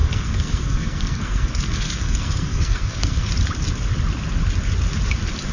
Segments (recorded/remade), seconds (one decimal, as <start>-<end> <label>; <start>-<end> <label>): 0.0-3.3 remade; 3.3-5.5 recorded